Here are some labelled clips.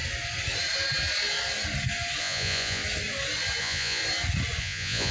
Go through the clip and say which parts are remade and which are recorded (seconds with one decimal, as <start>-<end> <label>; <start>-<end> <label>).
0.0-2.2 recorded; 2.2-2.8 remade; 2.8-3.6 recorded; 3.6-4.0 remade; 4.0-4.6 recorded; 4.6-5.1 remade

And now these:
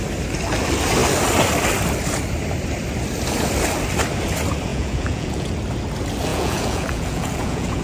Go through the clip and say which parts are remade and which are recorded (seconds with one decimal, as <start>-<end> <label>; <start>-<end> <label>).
0.0-4.7 recorded; 4.7-5.5 remade; 5.5-6.3 recorded; 6.3-7.8 remade

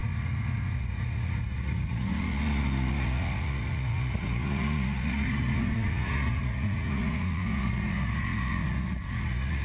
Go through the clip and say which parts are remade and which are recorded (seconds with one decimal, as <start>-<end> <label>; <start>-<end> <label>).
0.0-9.6 remade

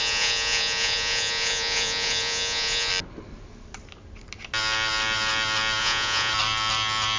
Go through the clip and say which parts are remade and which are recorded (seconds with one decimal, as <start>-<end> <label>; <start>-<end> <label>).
0.0-2.9 remade; 2.9-5.8 recorded; 5.8-6.3 remade; 6.3-7.2 recorded